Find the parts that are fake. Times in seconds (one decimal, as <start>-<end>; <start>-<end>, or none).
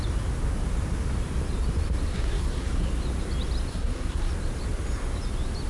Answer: 2.1-2.9; 3.7-4.3